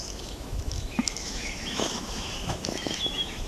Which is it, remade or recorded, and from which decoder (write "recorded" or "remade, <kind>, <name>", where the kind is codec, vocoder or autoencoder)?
remade, autoencoder, DAC-VAE